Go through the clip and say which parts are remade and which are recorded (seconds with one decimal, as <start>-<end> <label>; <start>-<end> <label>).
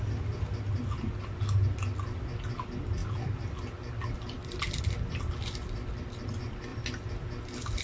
0.0-3.0 recorded; 3.0-4.8 remade; 4.8-6.7 recorded; 6.7-7.8 remade